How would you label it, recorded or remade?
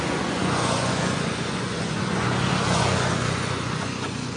remade